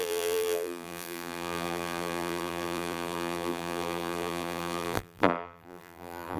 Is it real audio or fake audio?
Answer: fake